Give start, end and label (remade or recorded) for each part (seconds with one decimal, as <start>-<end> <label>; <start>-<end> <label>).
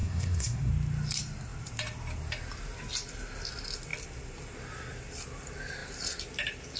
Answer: 0.0-0.7 remade; 0.7-6.8 recorded